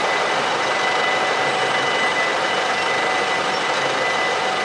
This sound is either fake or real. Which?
real